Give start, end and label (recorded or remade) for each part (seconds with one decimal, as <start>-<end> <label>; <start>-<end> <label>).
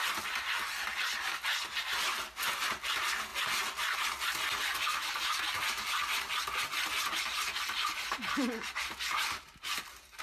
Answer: 0.0-10.2 recorded